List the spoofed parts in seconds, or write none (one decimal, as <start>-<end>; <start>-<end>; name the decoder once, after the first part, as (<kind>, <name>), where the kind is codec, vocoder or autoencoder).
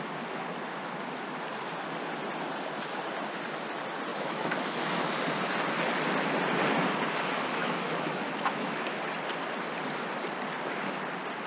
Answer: 4.1-5.1 (autoencoder, DAC-VAE); 7.6-9.0